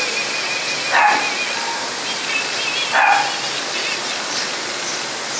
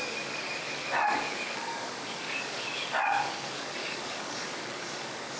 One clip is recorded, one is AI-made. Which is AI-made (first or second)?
second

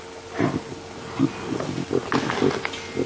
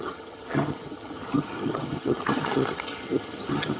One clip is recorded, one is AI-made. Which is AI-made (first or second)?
second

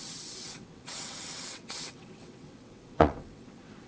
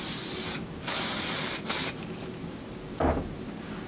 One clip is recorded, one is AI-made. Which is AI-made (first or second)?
first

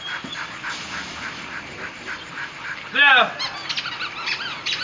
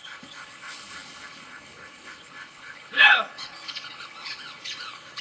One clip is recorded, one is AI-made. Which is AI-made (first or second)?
second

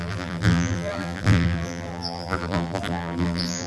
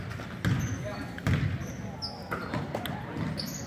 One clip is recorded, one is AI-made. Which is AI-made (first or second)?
first